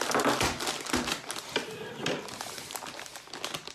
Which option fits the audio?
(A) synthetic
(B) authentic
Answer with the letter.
B